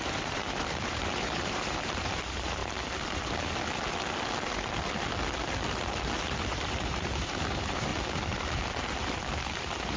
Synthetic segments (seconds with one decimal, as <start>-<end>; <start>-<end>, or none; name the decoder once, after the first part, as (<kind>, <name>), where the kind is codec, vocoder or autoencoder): 0.0-2.6 (vocoder, BigVGAN v2); 6.4-7.9; 9.3-10.0